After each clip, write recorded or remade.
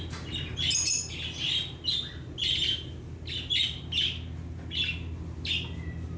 recorded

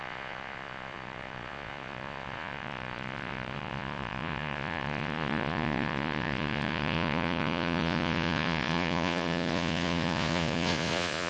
remade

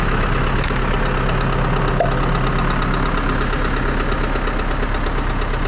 recorded